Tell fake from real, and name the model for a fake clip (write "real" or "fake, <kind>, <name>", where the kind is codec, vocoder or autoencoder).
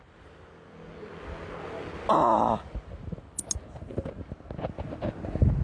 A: real